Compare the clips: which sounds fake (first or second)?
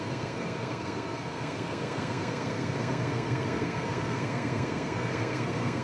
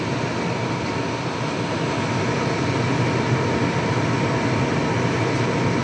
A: first